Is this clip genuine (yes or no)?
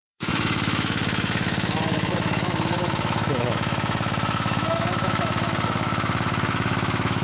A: no